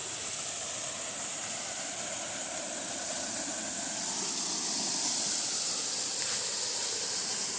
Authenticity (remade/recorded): recorded